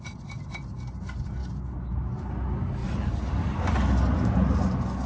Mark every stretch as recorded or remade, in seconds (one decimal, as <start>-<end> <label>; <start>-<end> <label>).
0.0-5.1 recorded